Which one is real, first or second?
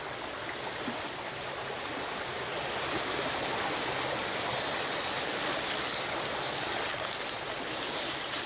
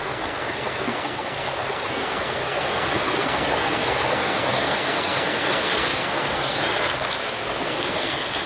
first